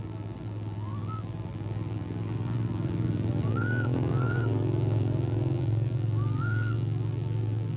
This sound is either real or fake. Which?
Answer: fake